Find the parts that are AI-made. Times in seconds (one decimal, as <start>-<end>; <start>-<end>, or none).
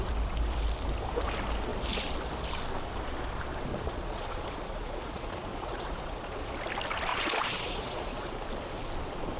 3.7-6.5; 7.1-8.3